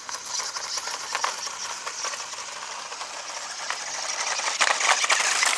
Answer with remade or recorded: recorded